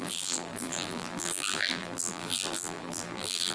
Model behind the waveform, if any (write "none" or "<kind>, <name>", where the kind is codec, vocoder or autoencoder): vocoder, BigVGAN v2